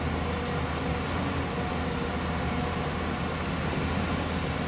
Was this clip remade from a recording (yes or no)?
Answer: no